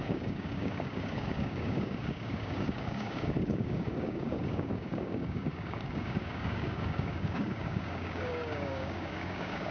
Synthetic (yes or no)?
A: yes